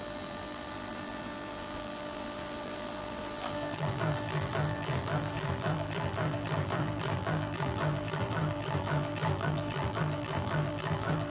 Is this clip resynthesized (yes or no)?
yes